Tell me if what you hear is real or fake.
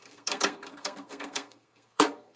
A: fake